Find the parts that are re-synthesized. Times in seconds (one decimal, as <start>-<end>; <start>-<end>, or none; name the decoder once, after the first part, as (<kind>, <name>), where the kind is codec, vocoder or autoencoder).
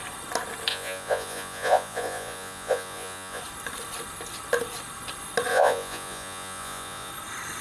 0.7-3.4 (vocoder, Vocos); 5.5-7.1